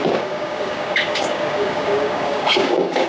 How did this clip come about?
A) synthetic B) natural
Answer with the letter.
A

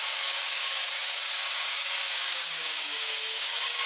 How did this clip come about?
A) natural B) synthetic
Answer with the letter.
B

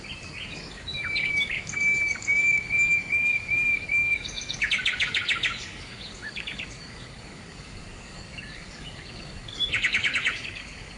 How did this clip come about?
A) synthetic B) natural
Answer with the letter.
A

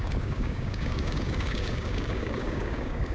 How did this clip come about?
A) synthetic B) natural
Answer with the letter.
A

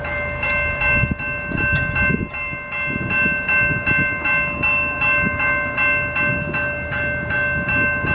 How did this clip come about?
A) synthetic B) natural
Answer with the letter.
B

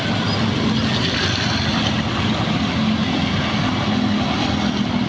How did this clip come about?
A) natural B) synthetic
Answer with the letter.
A